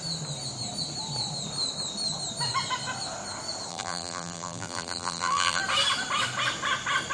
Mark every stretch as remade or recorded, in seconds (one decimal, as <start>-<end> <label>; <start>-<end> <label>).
0.0-3.7 recorded; 3.7-5.6 remade; 5.6-7.1 recorded